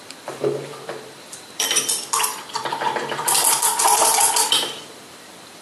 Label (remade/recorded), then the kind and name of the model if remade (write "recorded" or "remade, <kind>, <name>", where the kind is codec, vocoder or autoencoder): remade, vocoder, BigVGAN v2